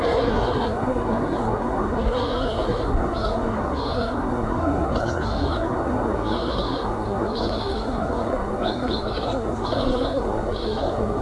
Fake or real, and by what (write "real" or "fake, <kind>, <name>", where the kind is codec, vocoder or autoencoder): fake, codec, SNAC